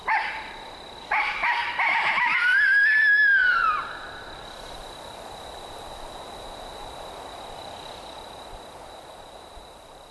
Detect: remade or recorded remade